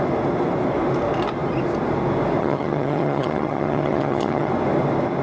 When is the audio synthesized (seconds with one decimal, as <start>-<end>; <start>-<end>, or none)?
2.4-4.5